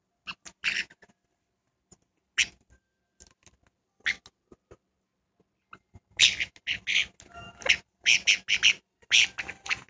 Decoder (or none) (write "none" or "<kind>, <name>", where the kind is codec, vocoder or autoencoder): none